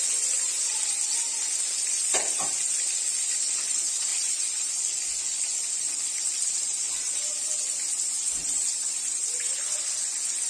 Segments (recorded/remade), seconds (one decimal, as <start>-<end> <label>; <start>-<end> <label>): 0.0-8.4 recorded; 8.4-9.7 remade; 9.7-10.5 recorded